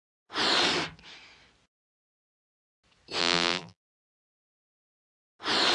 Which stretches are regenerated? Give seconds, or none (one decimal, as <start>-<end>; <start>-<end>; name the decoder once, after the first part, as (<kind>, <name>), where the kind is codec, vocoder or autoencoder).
3.2-3.8 (vocoder, BigVGAN v2)